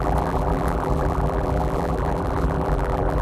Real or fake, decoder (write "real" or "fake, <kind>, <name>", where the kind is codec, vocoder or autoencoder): fake, vocoder, BigVGAN v2